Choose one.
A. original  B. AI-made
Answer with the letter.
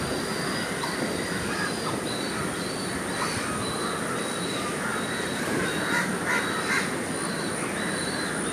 A